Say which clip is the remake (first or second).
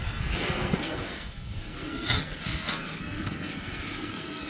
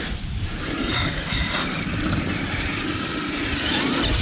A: first